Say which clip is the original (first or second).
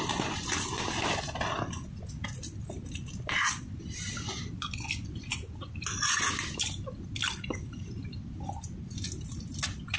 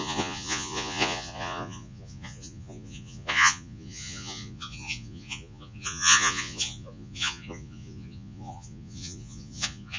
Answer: first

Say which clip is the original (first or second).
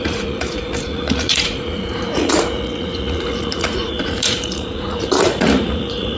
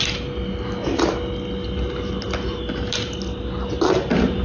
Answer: second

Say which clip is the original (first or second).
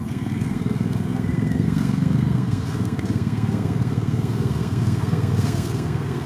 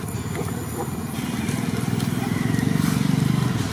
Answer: second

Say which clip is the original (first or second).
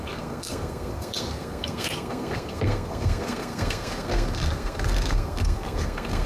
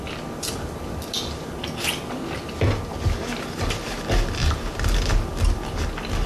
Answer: second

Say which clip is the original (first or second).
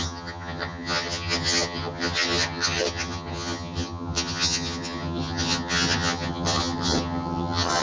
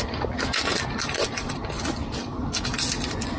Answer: second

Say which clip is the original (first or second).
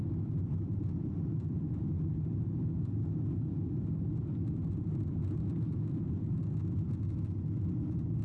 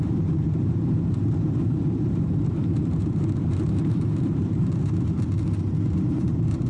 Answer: first